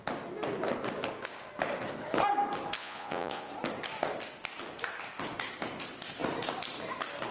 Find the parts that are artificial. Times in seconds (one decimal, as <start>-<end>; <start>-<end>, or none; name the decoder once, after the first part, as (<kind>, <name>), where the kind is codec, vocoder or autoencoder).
2.8-3.5 (vocoder, Vocos)